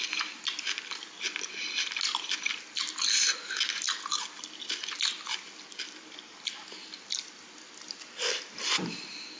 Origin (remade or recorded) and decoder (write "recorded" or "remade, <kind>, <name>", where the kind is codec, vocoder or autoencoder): recorded